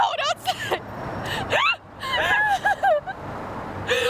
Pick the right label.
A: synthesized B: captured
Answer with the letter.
B